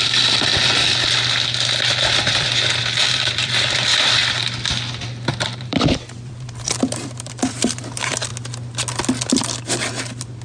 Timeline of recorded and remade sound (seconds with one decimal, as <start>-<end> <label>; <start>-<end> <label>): 0.0-0.5 remade; 0.5-2.8 recorded; 2.8-4.4 remade; 4.4-5.3 recorded; 5.3-8.3 remade; 8.3-9.3 recorded; 9.3-10.4 remade

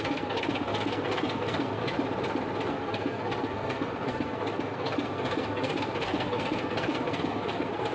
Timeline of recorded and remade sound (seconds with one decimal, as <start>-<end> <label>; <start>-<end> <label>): 0.0-1.8 remade; 1.8-2.7 recorded; 2.7-7.9 remade

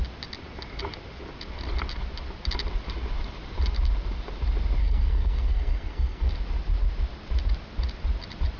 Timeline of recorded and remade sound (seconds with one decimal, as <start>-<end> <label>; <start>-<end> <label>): 0.0-4.8 recorded; 4.8-6.3 remade; 6.3-8.6 recorded

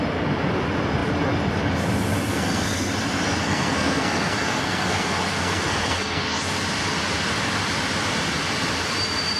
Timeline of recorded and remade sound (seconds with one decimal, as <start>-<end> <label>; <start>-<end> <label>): 0.0-2.3 recorded; 2.3-2.9 remade; 2.9-3.4 recorded; 3.4-6.2 remade; 6.2-9.4 recorded

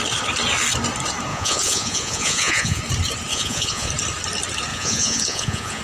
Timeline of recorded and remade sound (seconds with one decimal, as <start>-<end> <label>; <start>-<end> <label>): 0.0-1.3 recorded; 1.3-2.8 remade; 2.8-3.3 recorded; 3.3-3.9 remade; 3.9-4.7 recorded; 4.7-5.8 remade

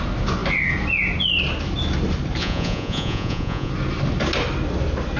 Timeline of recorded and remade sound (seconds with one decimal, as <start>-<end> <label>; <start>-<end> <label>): 0.0-2.4 recorded; 2.4-3.7 remade; 3.7-5.2 recorded